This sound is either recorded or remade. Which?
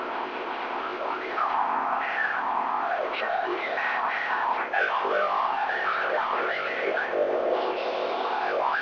remade